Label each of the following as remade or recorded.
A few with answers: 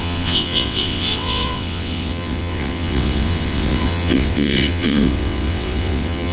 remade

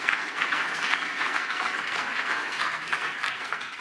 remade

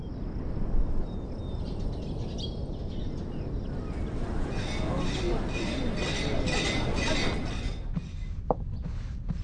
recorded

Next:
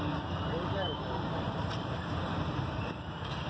remade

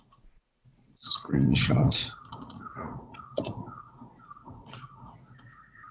remade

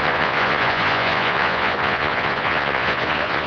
remade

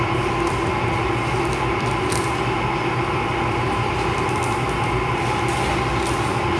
recorded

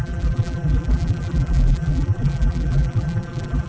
remade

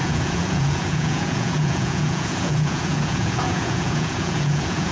remade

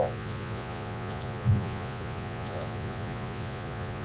remade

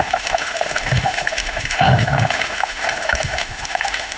remade